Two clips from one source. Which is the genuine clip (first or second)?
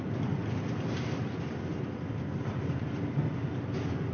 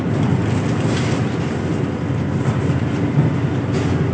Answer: second